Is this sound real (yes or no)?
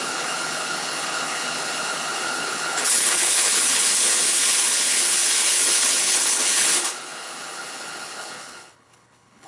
no